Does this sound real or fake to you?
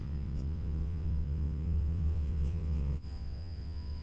fake